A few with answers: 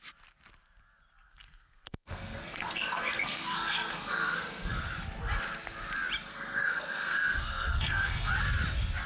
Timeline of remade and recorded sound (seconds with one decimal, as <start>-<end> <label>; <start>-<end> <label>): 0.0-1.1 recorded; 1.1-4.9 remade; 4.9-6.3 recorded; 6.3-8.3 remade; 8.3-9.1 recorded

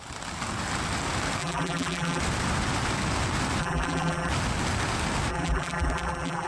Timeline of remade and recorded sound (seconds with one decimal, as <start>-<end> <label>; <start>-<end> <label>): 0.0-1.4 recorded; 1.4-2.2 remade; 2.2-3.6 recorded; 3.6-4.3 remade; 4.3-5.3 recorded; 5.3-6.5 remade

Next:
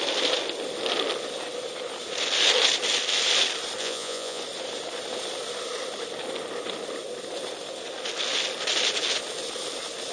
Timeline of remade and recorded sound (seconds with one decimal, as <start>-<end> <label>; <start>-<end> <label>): 0.0-3.8 recorded; 3.8-4.4 remade; 4.4-10.1 recorded

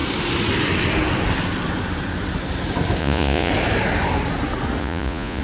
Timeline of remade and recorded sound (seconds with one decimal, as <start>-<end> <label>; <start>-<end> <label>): 0.0-3.0 recorded; 3.0-3.5 remade; 3.5-4.8 recorded; 4.8-5.4 remade

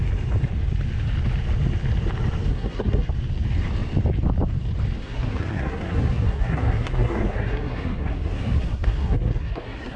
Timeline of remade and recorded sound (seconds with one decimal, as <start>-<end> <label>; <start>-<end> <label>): 0.0-2.5 recorded; 2.5-3.1 remade; 3.1-5.0 recorded; 5.0-10.0 remade